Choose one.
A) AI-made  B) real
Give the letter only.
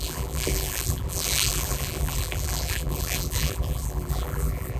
A